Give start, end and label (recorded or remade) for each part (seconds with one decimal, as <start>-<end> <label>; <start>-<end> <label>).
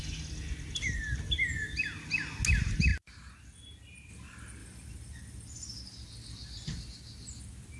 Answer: 0.0-4.6 recorded; 4.6-5.8 remade; 5.8-7.8 recorded